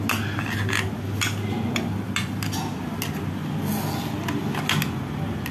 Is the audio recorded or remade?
recorded